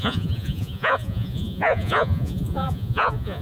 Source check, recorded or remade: remade